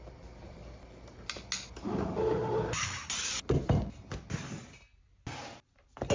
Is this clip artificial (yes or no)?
no